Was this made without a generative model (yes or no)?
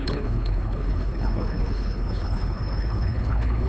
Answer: no